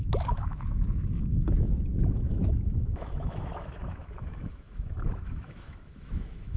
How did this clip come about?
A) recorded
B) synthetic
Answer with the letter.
B